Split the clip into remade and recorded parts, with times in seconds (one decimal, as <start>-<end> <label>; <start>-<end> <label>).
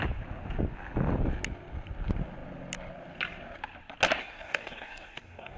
0.0-4.2 recorded; 4.2-5.6 remade